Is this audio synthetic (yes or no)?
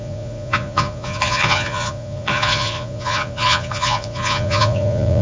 yes